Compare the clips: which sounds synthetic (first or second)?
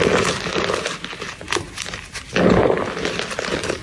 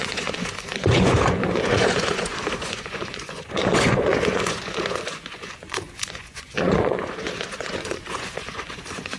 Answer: second